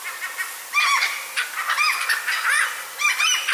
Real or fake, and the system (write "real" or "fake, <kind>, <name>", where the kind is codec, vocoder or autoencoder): real